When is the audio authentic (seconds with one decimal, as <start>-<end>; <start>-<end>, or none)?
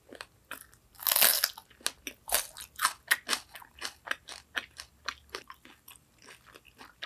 0.0-7.1